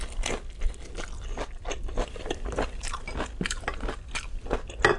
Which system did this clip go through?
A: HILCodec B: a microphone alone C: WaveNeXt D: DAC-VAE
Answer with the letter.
B